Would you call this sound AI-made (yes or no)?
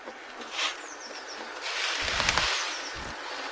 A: no